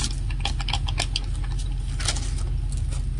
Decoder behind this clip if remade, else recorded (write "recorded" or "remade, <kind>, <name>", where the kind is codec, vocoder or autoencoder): recorded